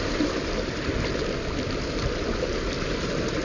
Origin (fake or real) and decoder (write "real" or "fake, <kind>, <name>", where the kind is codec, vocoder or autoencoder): real